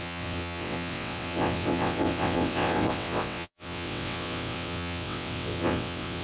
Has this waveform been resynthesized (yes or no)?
yes